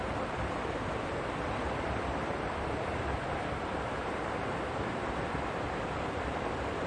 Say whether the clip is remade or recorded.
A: remade